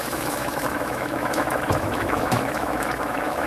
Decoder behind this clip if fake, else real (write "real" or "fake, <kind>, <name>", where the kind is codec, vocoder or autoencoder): fake, autoencoder, DAC-VAE